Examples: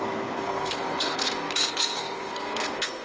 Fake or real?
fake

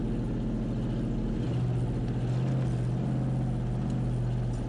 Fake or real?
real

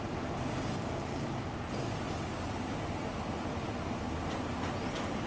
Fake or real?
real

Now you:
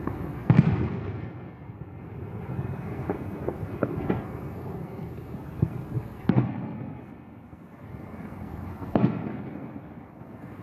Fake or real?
fake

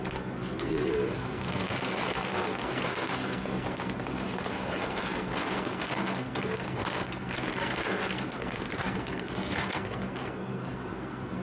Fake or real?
fake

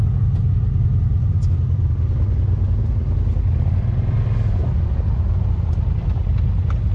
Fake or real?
real